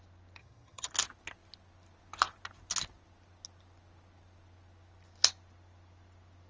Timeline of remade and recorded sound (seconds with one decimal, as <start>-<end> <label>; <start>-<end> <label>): 0.0-0.4 recorded; 0.4-0.9 remade; 0.9-6.5 recorded